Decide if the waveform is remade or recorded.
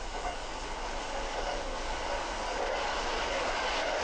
remade